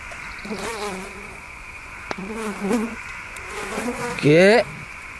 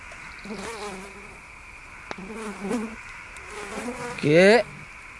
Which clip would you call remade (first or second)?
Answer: first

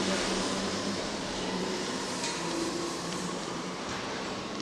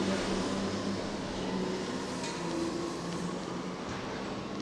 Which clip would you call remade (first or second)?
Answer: first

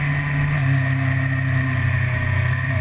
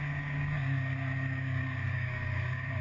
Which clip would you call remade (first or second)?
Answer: second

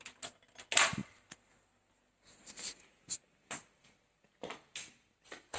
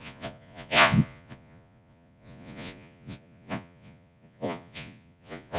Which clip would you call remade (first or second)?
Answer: second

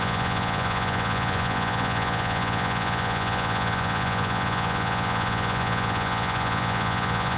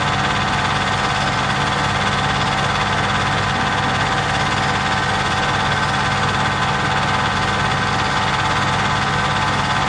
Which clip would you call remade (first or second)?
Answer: first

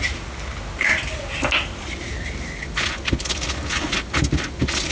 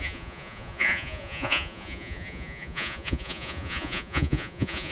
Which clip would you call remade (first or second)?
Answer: second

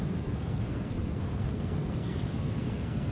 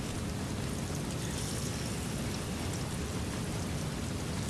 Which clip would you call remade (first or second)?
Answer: first